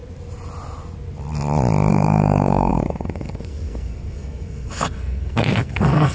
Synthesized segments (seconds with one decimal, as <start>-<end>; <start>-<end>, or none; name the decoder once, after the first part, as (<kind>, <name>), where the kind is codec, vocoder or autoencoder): 1.9-6.1 (codec, SNAC)